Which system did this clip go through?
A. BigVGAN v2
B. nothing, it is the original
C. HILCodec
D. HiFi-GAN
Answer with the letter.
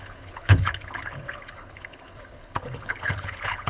C